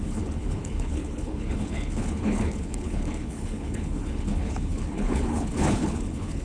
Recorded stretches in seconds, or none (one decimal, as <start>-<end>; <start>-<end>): none